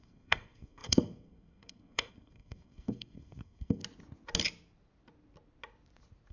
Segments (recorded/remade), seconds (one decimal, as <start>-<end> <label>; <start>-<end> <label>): 0.0-3.8 remade; 3.8-6.3 recorded

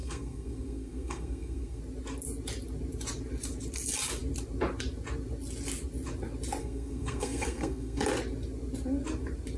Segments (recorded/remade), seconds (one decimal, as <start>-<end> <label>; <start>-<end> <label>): 0.0-1.8 remade; 1.8-6.6 recorded; 6.6-8.0 remade; 8.0-9.6 recorded